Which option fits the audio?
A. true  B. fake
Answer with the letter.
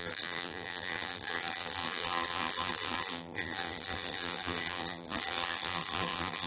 B